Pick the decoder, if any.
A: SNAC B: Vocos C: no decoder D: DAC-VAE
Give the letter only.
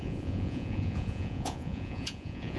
B